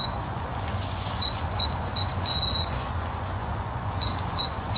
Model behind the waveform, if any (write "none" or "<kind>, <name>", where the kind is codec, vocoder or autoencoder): vocoder, Vocos